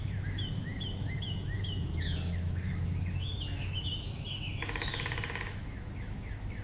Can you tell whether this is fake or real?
fake